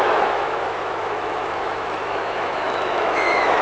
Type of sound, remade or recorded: remade